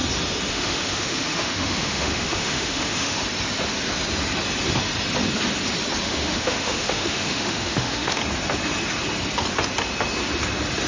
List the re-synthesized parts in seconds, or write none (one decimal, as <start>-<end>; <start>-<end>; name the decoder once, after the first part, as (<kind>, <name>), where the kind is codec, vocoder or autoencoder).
0.5-3.2 (autoencoder, DAC-VAE); 6.0-8.2